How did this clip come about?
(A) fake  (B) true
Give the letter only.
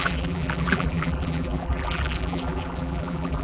A